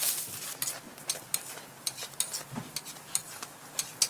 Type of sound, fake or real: real